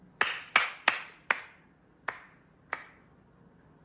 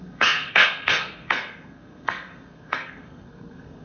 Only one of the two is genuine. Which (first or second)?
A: first